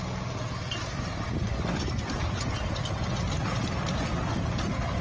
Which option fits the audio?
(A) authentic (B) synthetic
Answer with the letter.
A